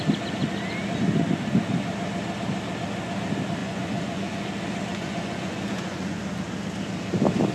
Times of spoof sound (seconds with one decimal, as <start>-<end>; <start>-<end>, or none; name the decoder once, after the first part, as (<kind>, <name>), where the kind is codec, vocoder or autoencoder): 3.6-4.4 (vocoder, Vocos); 4.9-6.2